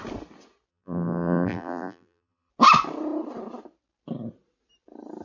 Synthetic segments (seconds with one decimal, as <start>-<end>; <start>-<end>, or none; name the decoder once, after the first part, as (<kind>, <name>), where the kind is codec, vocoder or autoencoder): 0.7-2.5 (vocoder, BigVGAN v2)